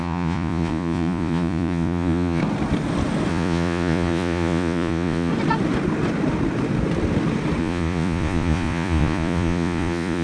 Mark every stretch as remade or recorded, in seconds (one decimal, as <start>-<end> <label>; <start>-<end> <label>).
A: 0.0-2.4 remade; 2.4-3.3 recorded; 3.3-5.3 remade; 5.3-7.6 recorded; 7.6-10.2 remade